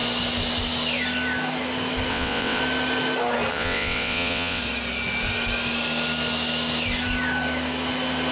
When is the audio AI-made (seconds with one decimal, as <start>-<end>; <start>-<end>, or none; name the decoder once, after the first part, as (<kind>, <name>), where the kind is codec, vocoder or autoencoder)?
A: 2.1-2.6 (vocoder, WaveNeXt); 3.5-4.6